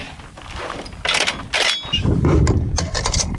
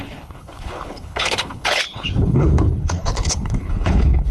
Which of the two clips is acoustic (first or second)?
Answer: first